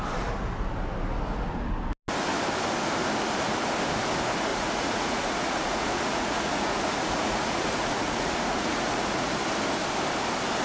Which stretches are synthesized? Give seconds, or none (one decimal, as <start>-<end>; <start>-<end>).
4.5-9.3